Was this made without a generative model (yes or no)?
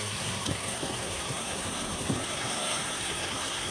no